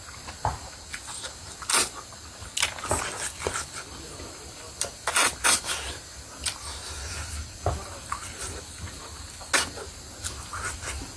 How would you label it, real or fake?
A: real